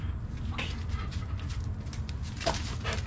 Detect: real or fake real